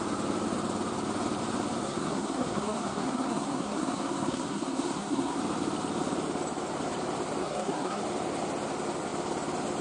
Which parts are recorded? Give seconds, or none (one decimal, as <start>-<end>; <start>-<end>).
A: 0.0-1.8; 5.4-7.4; 8.0-9.8